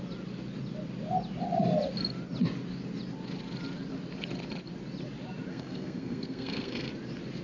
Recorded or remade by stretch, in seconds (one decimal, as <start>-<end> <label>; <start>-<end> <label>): 0.0-5.5 recorded; 5.5-6.9 remade; 6.9-7.4 recorded